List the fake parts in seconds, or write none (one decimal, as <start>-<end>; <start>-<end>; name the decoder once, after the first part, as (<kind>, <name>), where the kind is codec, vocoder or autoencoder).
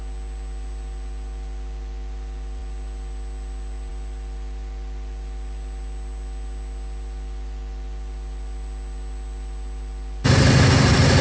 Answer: none